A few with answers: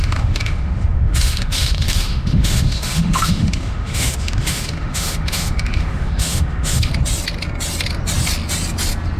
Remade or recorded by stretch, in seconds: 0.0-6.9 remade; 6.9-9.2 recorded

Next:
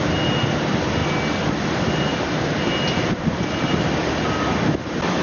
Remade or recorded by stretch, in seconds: 0.0-5.2 recorded

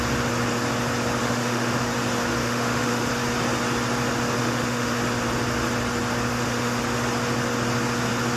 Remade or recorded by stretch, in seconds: 0.0-1.2 recorded; 1.2-1.8 remade; 1.8-2.4 recorded; 2.4-3.1 remade; 3.1-4.4 recorded; 4.4-5.0 remade; 5.0-6.3 recorded; 6.3-6.8 remade; 6.8-8.4 recorded

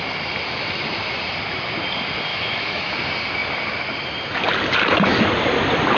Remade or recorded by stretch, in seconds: 0.0-2.3 recorded; 2.3-2.9 remade; 2.9-6.0 recorded

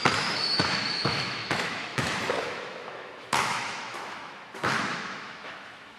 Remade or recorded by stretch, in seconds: 0.0-6.0 remade

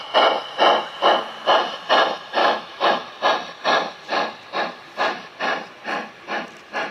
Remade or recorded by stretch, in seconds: 0.0-2.4 recorded; 2.4-3.1 remade; 3.1-6.9 recorded